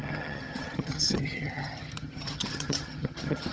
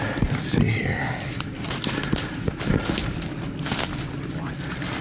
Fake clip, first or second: first